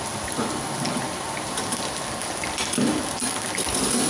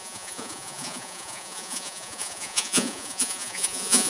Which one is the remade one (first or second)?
second